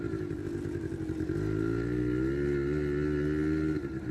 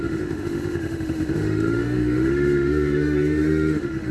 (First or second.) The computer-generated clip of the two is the second